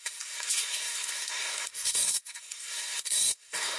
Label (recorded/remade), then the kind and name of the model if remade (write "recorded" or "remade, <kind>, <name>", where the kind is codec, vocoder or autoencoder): remade, codec, SNAC